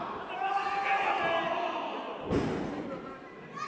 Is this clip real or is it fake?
real